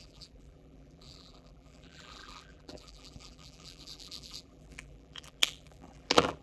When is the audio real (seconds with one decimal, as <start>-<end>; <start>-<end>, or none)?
none